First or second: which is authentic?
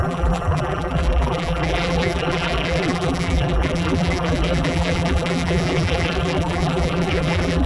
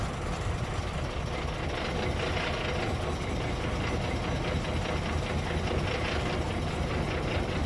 second